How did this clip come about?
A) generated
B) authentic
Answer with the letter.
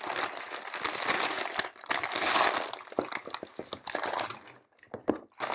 B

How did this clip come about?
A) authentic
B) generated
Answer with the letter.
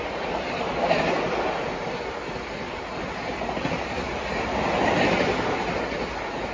A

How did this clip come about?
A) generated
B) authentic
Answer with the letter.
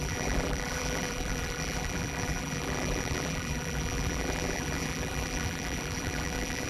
A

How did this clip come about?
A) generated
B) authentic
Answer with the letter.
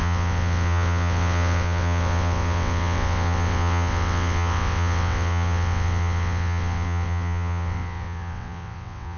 A